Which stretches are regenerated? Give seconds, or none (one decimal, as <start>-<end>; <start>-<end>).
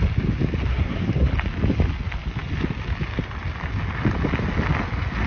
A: 0.7-1.3